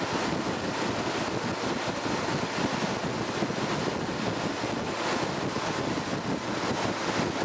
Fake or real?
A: real